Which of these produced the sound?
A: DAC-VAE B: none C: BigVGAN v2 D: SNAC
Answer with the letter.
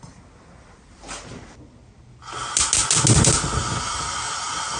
B